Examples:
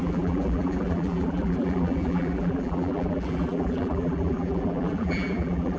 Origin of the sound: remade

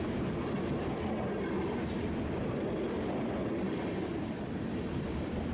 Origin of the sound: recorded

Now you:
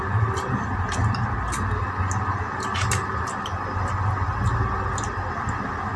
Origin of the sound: recorded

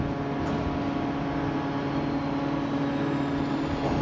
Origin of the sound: recorded